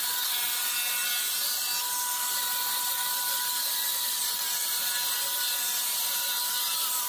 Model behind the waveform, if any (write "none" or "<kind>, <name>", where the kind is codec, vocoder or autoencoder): none